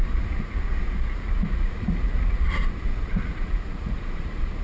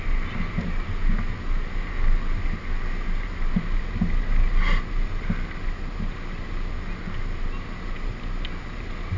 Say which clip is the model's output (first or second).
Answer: first